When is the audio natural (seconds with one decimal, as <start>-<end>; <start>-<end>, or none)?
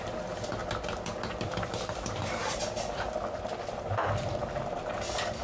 0.0-0.6; 3.8-5.4